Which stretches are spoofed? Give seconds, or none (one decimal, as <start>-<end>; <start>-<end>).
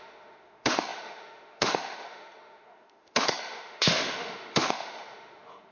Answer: 0.0-5.7